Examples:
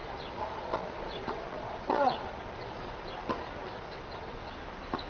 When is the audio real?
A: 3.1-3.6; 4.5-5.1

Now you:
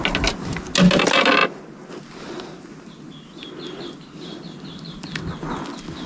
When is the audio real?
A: 0.0-6.1